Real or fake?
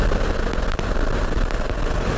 real